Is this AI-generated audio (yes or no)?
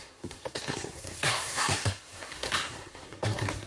yes